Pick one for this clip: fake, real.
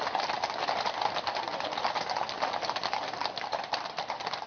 real